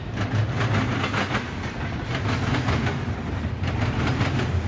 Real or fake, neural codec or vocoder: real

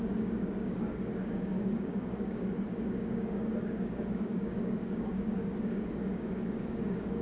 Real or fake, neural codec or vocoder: fake, codec, DAC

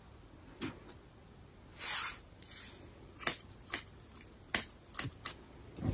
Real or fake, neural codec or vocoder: real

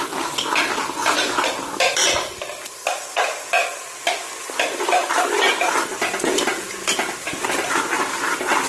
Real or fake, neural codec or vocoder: real